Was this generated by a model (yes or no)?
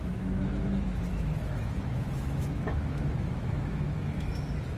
yes